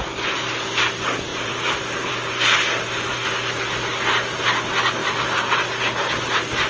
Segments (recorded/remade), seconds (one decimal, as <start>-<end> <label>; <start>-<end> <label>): 0.0-1.3 recorded; 1.3-2.1 remade; 2.1-6.7 recorded